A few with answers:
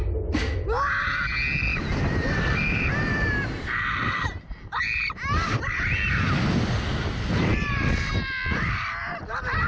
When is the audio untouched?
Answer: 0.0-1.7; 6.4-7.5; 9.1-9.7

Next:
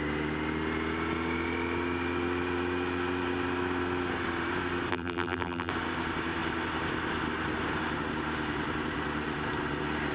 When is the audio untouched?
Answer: 0.0-4.9; 5.7-10.1

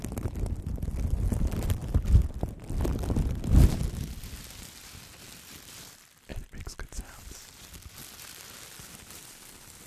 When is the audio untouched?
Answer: none